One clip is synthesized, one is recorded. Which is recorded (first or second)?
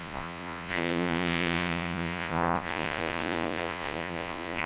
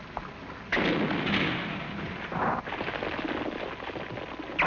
second